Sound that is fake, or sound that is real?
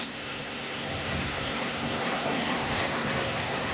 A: fake